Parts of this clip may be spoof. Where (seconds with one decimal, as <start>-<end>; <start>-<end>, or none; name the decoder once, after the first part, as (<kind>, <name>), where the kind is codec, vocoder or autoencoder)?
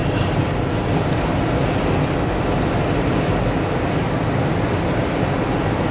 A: 0.0-1.4 (vocoder, BigVGAN v2)